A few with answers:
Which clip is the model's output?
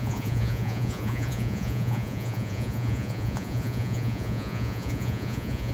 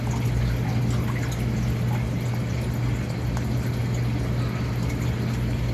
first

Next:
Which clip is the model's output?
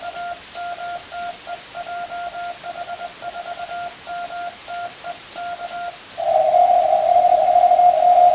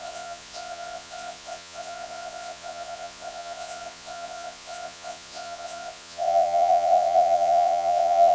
second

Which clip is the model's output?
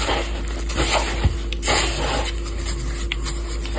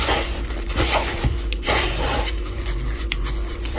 second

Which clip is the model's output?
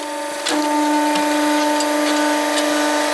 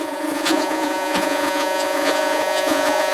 second